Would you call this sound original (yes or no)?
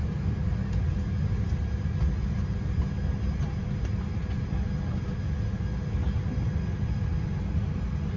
yes